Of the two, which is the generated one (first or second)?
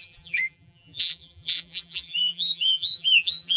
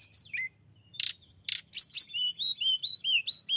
first